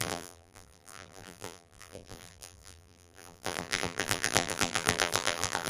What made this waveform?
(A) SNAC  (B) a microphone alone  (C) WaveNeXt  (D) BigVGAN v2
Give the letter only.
D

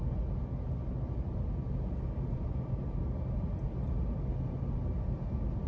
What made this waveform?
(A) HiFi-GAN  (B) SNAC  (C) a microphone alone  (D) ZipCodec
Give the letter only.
C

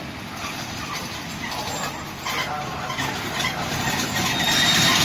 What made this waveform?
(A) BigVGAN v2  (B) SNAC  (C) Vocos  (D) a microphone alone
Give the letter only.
D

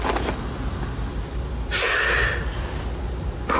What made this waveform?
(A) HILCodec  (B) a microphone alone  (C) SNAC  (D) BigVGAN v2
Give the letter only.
B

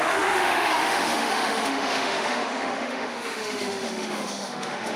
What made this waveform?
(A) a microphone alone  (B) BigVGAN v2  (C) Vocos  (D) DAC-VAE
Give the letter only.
D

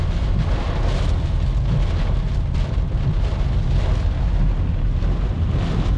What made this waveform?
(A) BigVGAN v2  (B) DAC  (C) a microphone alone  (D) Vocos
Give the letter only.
C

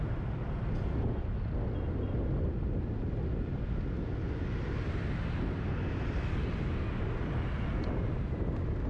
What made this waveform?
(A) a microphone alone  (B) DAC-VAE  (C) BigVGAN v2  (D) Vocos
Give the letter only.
A